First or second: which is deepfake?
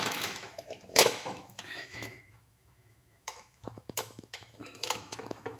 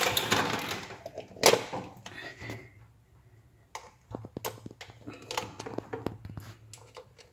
first